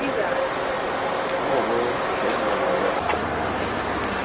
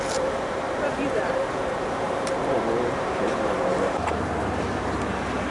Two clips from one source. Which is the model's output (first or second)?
second